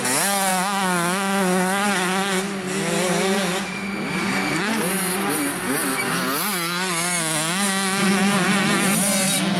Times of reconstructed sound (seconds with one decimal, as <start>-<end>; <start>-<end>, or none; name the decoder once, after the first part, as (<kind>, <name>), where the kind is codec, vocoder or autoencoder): none